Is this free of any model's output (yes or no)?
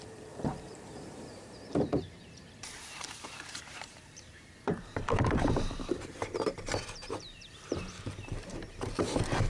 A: no